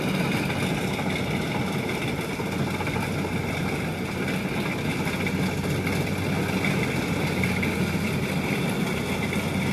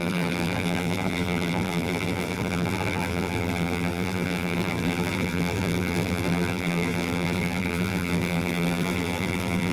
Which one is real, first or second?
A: first